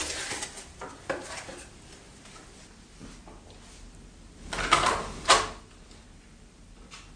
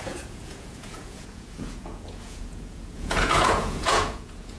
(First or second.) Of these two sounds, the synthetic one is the second